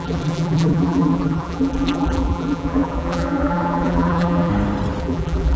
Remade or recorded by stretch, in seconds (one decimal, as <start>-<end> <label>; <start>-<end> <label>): 0.0-4.5 remade; 4.5-5.0 recorded; 5.0-5.6 remade